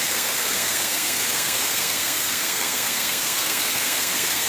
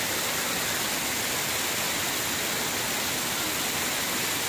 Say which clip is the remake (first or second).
first